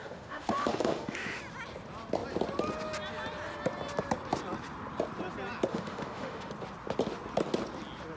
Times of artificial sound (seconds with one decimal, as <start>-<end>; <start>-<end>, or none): 0.0-1.4; 5.7-6.5